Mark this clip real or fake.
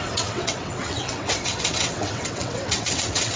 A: fake